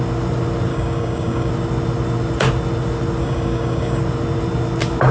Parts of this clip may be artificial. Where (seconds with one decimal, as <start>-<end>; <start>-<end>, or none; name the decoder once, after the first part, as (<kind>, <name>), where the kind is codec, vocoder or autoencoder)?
0.7-1.5 (codec, DAC); 3.2-4.0